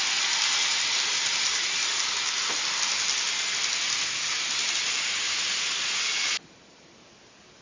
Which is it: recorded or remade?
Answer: recorded